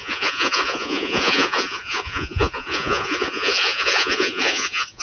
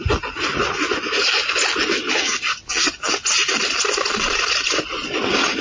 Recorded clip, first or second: second